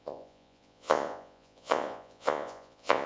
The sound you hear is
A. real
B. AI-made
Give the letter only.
B